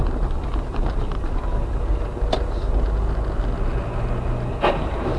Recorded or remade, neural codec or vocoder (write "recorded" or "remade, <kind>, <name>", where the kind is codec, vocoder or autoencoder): recorded